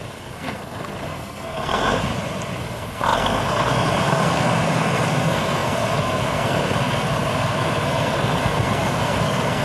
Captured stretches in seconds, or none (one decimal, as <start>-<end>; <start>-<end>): 2.1-2.6